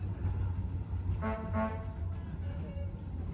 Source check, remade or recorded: recorded